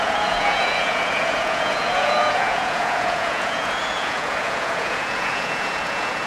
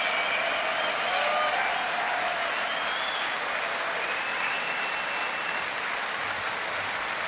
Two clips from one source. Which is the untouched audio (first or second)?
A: second